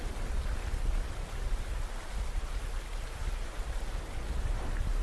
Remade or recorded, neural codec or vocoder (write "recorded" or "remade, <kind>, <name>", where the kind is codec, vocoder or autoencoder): recorded